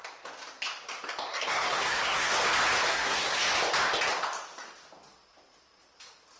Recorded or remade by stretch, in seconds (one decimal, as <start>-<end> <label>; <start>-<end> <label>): 0.0-1.3 recorded; 1.3-2.3 remade; 2.3-2.9 recorded; 2.9-3.4 remade; 3.4-6.4 recorded

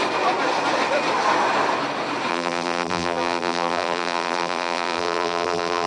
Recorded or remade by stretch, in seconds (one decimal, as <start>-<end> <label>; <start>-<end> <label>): 0.0-2.3 recorded; 2.3-5.9 remade

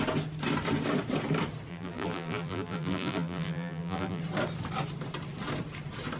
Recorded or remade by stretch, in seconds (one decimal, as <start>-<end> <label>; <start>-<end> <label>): 0.0-1.7 recorded; 1.7-4.2 remade; 4.2-6.2 recorded

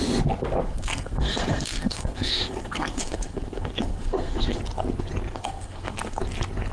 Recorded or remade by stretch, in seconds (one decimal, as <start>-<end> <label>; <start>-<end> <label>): 0.0-0.6 recorded; 0.6-4.6 remade; 4.6-5.3 recorded; 5.3-6.2 remade; 6.2-6.7 recorded

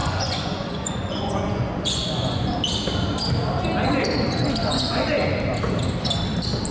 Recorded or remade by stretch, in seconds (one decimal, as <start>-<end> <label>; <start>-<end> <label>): 0.0-2.5 remade; 2.5-4.6 recorded; 4.6-5.3 remade; 5.3-6.7 recorded

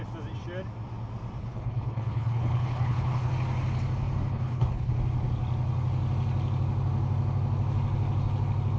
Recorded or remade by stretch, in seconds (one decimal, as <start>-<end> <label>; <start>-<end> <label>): 0.0-1.4 recorded; 1.4-3.3 remade; 3.3-4.3 recorded; 4.3-4.9 remade; 4.9-8.8 recorded